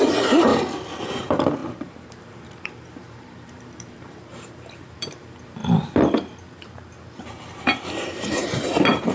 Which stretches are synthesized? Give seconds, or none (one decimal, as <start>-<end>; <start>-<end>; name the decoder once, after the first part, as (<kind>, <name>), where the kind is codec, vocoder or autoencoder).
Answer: 0.0-0.5 (vocoder, BigVGAN v2); 1.0-5.6; 6.7-9.1